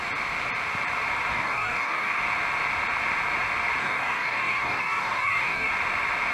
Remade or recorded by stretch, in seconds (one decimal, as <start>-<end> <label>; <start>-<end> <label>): 0.0-1.3 recorded; 1.3-2.2 remade; 2.2-3.8 recorded; 3.8-5.7 remade; 5.7-6.3 recorded